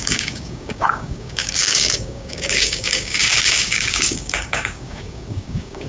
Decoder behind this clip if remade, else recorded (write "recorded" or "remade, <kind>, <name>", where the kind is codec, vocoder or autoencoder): remade, codec, DAC